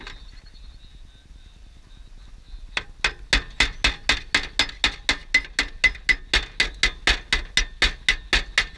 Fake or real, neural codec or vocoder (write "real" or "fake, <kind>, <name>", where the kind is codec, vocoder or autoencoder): real